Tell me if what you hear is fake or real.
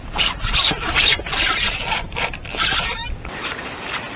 fake